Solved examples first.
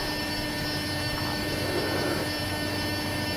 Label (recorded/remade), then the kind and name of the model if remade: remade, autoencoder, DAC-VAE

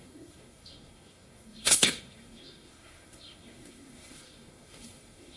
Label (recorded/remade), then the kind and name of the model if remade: remade, codec, SNAC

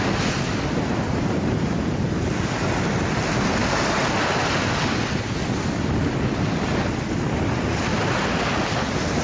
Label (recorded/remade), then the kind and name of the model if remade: recorded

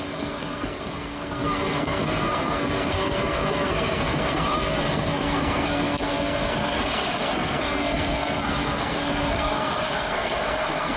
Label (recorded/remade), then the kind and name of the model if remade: remade, codec, SNAC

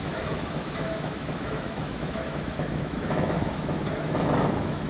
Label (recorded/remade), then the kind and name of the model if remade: remade, autoencoder, DAC-VAE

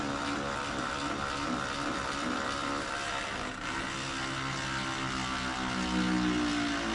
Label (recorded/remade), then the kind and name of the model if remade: recorded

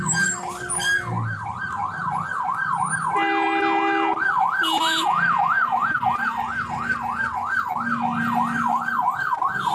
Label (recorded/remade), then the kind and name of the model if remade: recorded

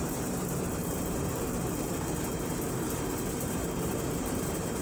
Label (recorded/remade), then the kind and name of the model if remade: remade, vocoder, BigVGAN v2